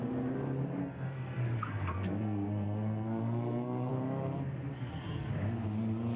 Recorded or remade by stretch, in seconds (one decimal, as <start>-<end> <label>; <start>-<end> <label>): 0.0-0.8 recorded; 0.8-3.9 remade; 3.9-4.7 recorded; 4.7-5.3 remade; 5.3-6.2 recorded